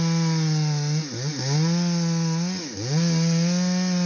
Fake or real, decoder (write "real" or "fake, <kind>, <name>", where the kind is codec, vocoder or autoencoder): real